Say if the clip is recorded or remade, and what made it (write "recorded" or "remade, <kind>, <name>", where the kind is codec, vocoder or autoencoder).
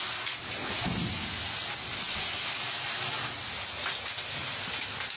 recorded